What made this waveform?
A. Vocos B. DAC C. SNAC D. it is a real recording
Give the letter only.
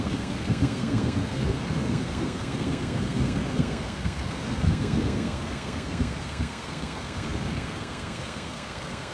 C